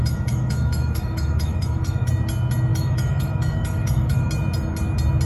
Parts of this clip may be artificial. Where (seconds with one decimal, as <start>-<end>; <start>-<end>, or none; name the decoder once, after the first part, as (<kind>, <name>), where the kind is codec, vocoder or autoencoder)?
0.0-2.1 (autoencoder, DAC-VAE); 2.7-4.3